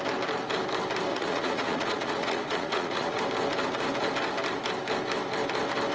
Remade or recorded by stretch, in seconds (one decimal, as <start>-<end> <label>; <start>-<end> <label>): 0.0-1.1 recorded; 1.1-3.2 remade; 3.2-5.9 recorded